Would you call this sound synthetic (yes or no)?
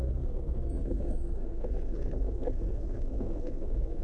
yes